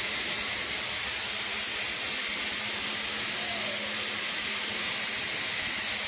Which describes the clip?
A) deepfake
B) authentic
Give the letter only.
B